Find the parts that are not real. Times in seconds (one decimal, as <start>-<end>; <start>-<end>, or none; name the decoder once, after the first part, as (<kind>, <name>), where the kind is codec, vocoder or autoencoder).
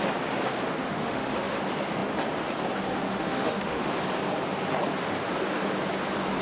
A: 0.8-1.6 (autoencoder, DAC-VAE); 3.1-3.9